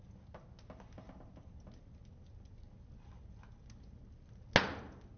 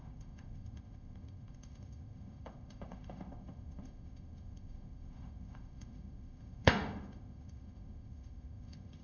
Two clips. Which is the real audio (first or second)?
first